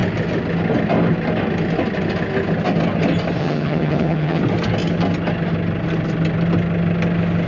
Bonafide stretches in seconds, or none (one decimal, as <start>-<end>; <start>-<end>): 0.0-3.4; 4.4-7.5